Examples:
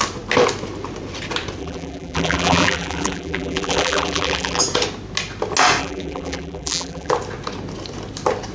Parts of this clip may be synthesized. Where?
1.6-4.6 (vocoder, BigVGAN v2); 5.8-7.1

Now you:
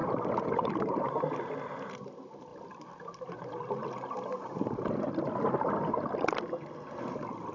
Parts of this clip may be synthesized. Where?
none

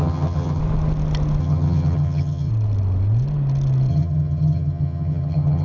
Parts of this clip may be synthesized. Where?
0.0-0.6 (vocoder, HiFi-GAN); 1.4-2.5; 3.9-5.6

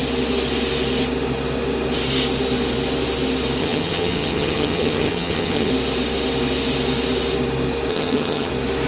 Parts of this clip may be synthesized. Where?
3.6-5.7 (vocoder, HiFi-GAN); 7.9-8.5